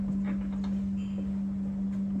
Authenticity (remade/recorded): recorded